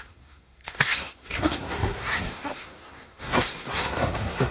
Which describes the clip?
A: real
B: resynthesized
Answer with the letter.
B